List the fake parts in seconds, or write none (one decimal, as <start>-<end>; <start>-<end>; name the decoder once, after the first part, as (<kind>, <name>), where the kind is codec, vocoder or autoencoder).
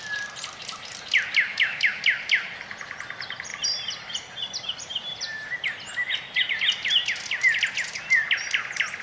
1.5-2.0 (autoencoder, DAC-VAE)